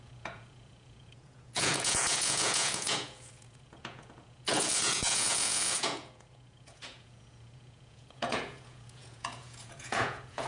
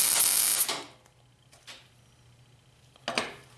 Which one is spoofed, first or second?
first